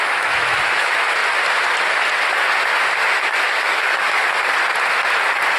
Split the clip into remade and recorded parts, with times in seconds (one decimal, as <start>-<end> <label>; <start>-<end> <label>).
0.0-1.2 remade; 1.2-3.0 recorded; 3.0-4.2 remade; 4.2-5.6 recorded